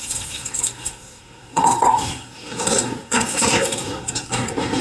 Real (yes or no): no